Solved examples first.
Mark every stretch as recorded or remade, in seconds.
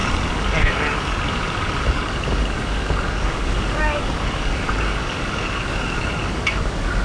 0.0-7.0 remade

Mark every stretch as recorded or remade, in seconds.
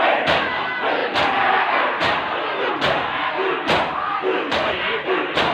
0.0-5.5 recorded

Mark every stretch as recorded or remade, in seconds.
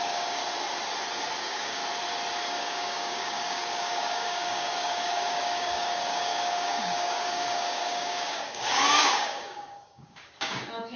0.0-0.4 remade; 0.4-1.4 recorded; 1.4-1.8 remade; 1.8-2.4 recorded; 2.4-11.0 remade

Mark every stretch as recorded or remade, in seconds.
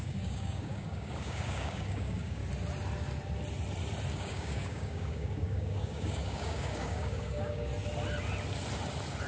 0.0-2.4 remade; 2.4-4.1 recorded; 4.1-7.7 remade; 7.7-9.3 recorded